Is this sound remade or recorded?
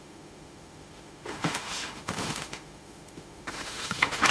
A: remade